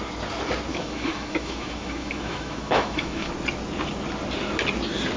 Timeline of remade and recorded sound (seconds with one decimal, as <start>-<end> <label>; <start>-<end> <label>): 0.0-0.7 recorded; 0.7-3.3 remade; 3.3-5.2 recorded